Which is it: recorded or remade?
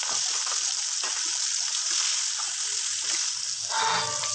recorded